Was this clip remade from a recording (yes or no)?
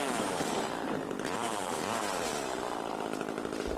yes